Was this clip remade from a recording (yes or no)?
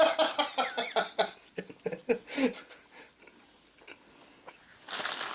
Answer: no